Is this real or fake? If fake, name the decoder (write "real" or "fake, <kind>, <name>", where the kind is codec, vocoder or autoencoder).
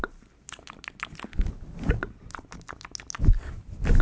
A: real